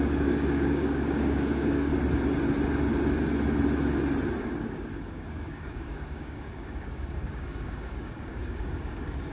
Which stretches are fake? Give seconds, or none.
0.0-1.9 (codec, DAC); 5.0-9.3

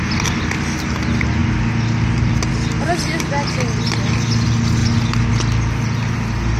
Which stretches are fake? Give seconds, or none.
none

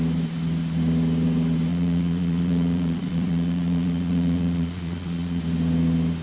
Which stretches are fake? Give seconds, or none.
1.7-5.4 (vocoder, Vocos)